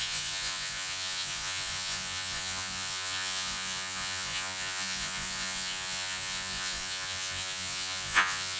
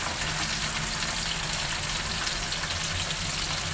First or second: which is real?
second